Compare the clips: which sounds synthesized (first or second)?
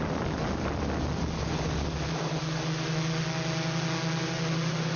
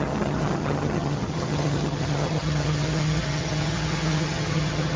second